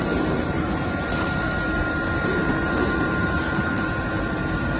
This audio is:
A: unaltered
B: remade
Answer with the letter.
B